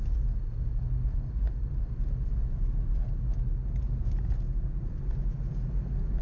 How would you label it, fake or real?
real